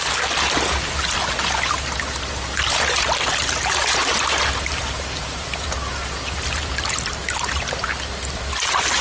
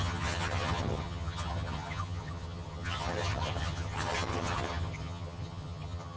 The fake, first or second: second